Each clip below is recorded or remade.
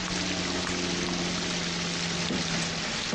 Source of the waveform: recorded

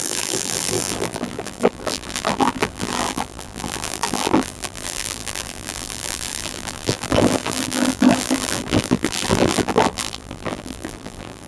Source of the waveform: remade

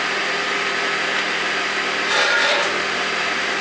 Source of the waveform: recorded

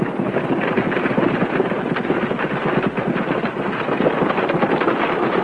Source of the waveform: remade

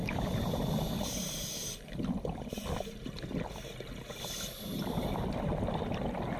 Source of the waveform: recorded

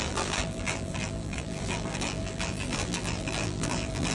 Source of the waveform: remade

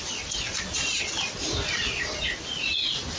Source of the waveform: recorded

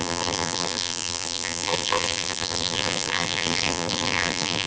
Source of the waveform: remade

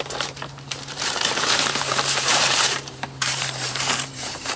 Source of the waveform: remade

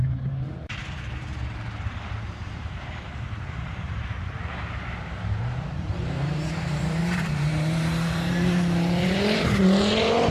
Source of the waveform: remade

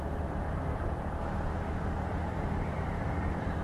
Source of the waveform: remade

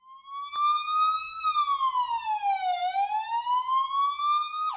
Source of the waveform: recorded